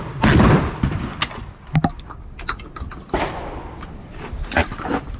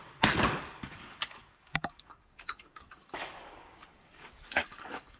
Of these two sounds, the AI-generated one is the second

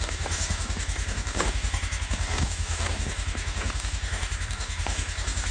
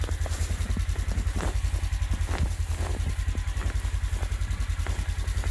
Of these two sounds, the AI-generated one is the first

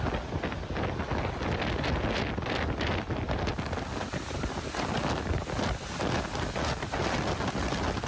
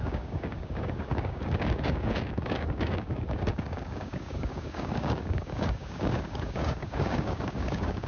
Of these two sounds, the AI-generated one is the second